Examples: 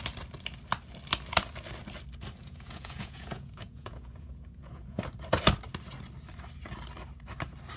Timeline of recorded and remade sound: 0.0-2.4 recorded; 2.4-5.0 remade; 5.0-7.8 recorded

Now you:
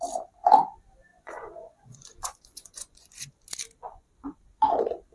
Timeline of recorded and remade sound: 0.0-1.1 recorded; 1.1-3.3 remade; 3.3-3.8 recorded; 3.8-4.4 remade; 4.4-5.1 recorded

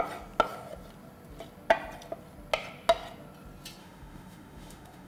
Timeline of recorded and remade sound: 0.0-3.8 recorded; 3.8-5.1 remade

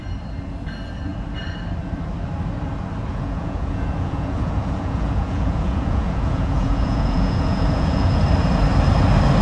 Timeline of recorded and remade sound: 0.0-3.1 recorded; 3.1-8.2 remade; 8.2-9.4 recorded